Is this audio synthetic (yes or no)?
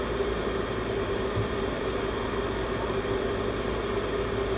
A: no